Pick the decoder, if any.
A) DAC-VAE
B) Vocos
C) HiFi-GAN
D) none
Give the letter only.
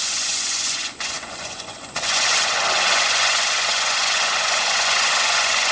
B